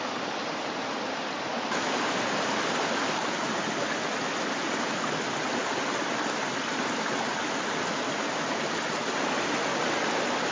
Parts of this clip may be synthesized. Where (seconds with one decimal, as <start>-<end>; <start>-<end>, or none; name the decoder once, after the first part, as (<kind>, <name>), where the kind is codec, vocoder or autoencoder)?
none